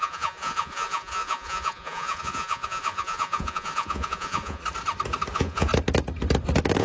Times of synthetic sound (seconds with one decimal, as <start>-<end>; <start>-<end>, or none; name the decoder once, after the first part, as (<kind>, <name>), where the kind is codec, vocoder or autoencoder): 0.0-4.6 (vocoder, Vocos); 5.3-5.7